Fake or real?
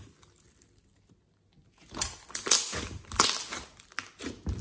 real